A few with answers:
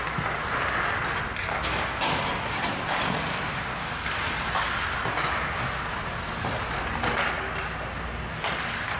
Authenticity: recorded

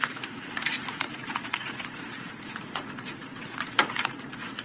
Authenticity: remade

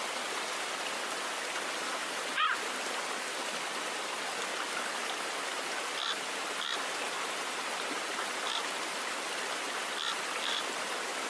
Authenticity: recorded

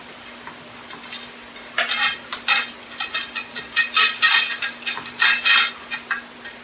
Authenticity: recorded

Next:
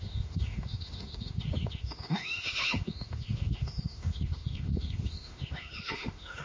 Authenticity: remade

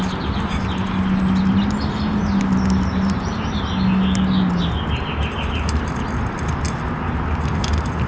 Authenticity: recorded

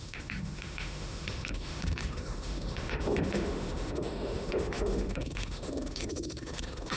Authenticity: remade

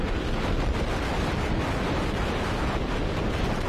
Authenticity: recorded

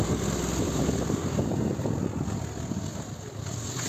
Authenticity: recorded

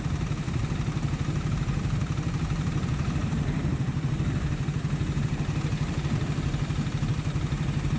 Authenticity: remade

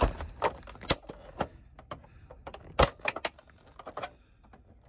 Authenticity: recorded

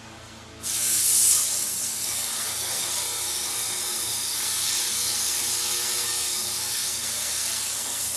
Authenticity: remade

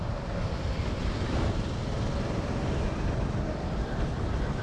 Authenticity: recorded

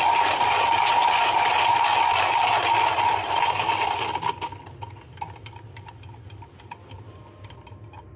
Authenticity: recorded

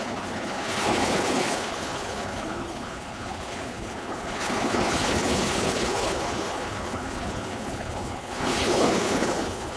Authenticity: remade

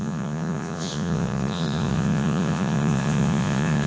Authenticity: remade